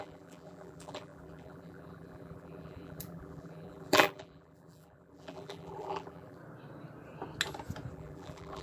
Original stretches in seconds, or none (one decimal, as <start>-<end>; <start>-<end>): 6.4-7.9